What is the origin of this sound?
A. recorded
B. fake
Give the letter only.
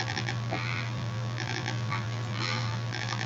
B